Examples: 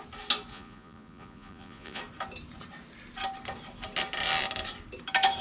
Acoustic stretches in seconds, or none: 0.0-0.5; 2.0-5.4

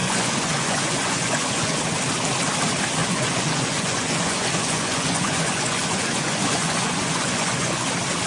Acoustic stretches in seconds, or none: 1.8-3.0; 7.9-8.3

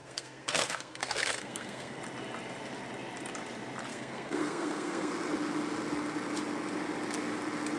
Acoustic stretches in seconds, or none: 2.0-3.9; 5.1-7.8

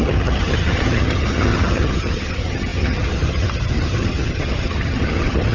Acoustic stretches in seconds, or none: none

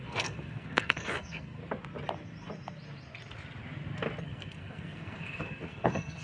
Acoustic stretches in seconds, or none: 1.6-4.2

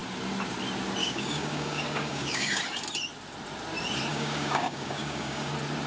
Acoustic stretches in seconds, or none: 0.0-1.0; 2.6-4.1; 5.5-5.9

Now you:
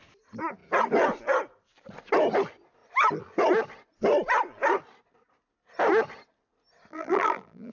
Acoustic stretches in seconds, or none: 0.0-6.9